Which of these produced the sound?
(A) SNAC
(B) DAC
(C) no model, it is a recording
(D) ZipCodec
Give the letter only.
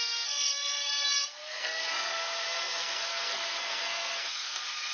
A